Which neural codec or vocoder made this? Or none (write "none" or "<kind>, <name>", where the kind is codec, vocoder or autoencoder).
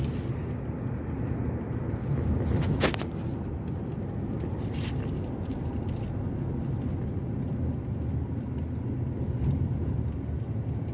none